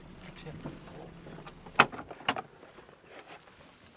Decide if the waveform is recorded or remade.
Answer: recorded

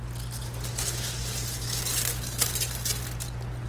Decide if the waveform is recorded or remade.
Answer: recorded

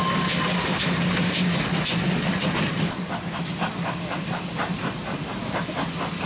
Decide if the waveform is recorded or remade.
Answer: recorded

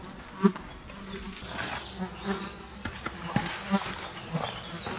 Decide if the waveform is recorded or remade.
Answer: recorded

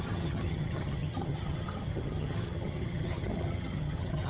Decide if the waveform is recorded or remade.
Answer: remade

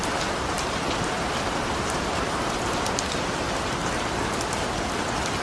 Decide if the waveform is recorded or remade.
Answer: recorded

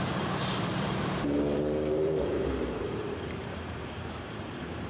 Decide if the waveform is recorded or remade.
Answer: remade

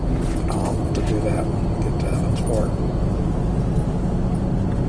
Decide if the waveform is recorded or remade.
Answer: recorded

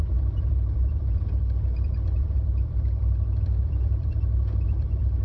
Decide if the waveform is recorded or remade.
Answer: remade